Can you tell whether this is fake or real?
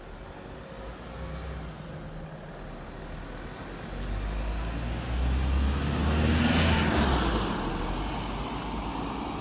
real